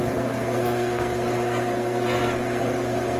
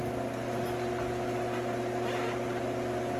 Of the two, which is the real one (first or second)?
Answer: second